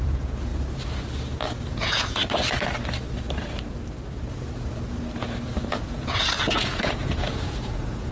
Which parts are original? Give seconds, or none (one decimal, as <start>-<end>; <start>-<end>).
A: 0.5-1.7; 2.2-5.7